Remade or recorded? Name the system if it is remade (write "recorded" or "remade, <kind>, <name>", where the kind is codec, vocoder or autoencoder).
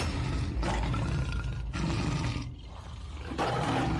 recorded